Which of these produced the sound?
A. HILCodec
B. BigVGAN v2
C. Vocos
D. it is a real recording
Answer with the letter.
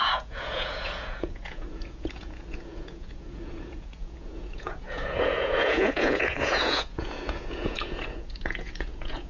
C